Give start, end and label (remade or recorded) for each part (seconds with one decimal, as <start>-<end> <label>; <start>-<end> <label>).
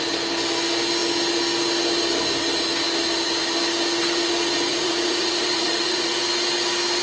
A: 0.0-4.7 recorded; 4.7-6.1 remade; 6.1-7.0 recorded